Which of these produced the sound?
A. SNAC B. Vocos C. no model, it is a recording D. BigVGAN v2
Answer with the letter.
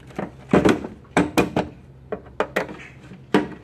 C